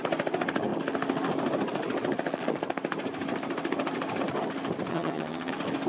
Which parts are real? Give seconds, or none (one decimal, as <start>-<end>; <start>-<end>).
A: 0.0-4.9; 5.5-5.9